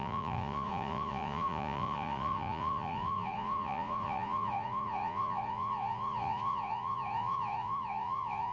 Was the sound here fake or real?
fake